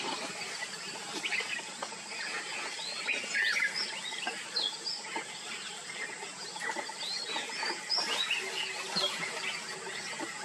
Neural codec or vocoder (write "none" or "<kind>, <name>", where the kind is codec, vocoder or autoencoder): none